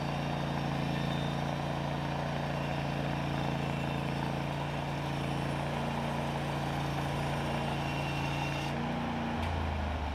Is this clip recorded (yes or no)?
yes